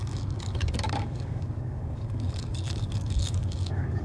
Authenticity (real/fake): fake